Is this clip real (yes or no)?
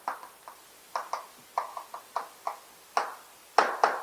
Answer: yes